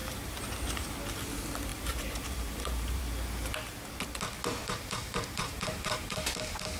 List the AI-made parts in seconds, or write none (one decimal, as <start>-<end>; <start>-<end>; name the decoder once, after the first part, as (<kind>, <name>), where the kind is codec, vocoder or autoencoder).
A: 0.0-0.8 (vocoder, BigVGAN v2); 1.7-3.0; 4.6-6.2